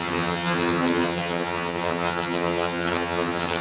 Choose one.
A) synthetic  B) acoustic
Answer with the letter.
A